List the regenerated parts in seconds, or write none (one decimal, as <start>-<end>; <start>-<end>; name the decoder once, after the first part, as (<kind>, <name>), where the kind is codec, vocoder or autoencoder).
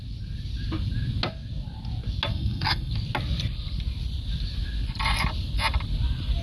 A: 2.3-2.9 (codec, SNAC)